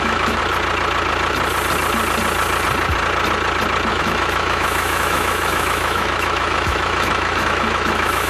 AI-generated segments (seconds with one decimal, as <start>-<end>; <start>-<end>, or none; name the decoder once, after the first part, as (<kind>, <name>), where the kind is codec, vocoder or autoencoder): 0.0-0.4 (autoencoder, DAC-VAE); 3.9-8.3